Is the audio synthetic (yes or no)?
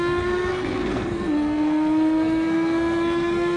yes